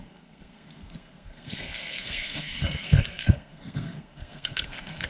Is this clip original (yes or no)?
no